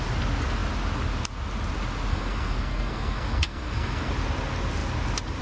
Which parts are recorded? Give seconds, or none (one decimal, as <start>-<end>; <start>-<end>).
0.0-2.1; 4.1-5.4